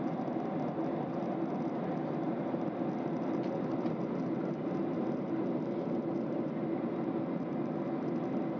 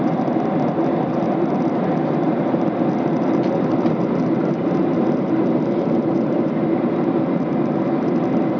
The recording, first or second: first